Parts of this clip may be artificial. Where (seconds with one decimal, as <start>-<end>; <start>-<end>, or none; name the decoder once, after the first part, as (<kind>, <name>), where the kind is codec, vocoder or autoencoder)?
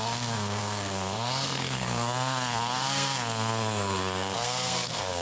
0.0-5.2 (codec, SNAC)